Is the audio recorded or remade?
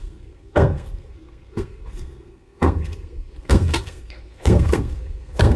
remade